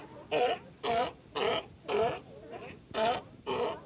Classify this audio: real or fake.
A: real